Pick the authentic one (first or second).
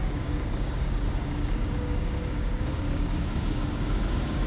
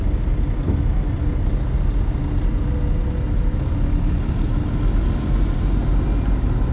second